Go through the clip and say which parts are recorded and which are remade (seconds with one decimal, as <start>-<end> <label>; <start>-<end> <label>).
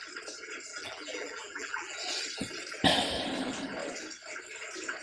0.0-0.7 recorded; 0.7-2.0 remade; 2.0-5.0 recorded